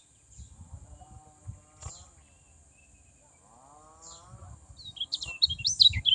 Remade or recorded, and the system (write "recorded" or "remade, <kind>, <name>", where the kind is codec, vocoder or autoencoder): recorded